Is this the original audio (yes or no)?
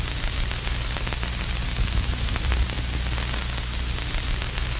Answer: yes